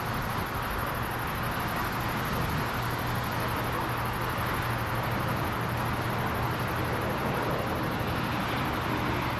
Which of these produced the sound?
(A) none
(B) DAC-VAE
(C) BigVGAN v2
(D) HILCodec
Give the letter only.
A